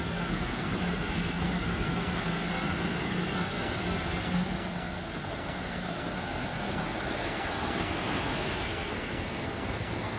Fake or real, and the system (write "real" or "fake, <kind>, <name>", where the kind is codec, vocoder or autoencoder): fake, codec, SNAC